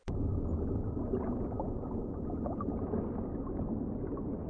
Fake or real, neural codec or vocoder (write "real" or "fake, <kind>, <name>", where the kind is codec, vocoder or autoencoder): real